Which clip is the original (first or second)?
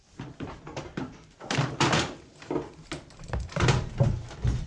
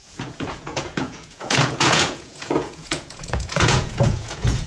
first